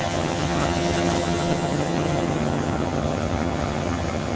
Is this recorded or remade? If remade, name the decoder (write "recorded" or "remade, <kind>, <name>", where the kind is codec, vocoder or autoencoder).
remade, vocoder, HiFi-GAN